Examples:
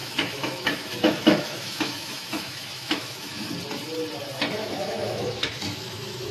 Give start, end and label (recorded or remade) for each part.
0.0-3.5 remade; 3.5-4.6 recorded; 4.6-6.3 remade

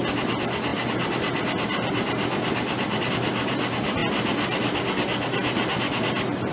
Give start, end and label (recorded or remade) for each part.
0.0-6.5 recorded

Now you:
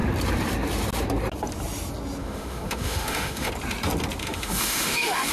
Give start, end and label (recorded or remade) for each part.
0.0-2.2 recorded; 2.2-3.5 remade; 3.5-4.2 recorded; 4.2-5.3 remade